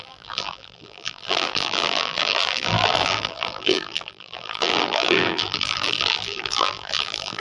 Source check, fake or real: fake